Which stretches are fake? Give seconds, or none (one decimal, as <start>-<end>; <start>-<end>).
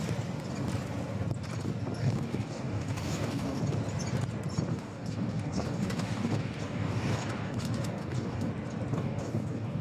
2.0-3.6; 4.7-8.5; 8.9-9.8